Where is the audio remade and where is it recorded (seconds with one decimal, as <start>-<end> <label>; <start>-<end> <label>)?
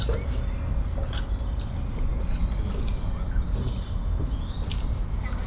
0.0-5.5 recorded